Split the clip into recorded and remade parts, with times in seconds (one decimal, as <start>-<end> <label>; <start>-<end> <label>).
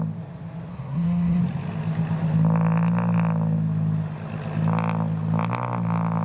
0.0-0.7 recorded; 0.7-1.4 remade; 1.4-6.2 recorded